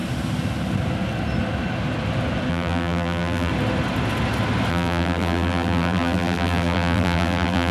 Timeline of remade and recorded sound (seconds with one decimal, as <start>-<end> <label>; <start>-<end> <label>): 0.0-2.5 recorded; 2.5-3.5 remade; 3.5-4.7 recorded; 4.7-7.7 remade